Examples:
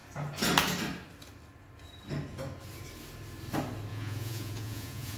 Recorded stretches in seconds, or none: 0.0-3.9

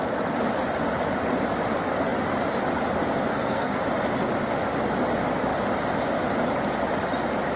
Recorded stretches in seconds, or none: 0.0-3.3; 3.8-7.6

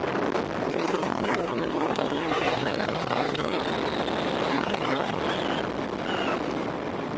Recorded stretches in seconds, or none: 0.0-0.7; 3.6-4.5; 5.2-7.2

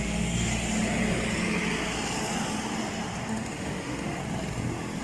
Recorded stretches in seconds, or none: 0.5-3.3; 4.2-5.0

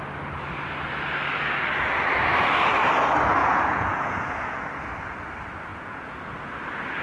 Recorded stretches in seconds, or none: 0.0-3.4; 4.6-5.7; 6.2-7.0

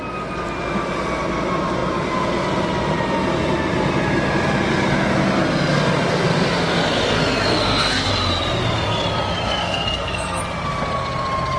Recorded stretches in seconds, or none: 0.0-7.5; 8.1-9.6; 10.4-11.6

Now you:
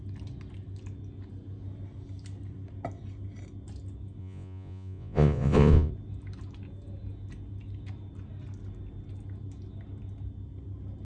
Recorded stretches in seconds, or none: 0.0-4.2; 5.9-11.0